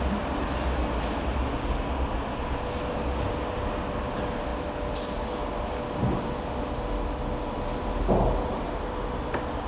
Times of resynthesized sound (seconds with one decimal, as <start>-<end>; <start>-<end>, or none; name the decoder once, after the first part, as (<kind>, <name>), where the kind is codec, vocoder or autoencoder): none